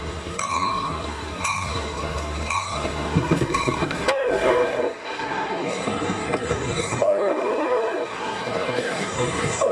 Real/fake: fake